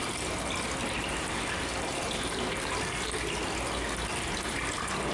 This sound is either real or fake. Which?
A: real